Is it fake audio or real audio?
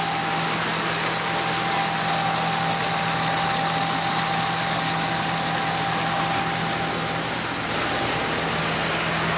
real